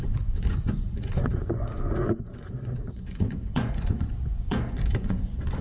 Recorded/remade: remade